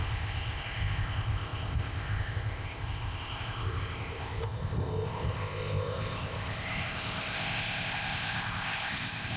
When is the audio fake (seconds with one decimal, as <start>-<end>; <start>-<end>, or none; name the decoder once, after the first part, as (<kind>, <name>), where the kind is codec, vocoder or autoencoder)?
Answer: 0.0-9.4 (codec, ZipCodec)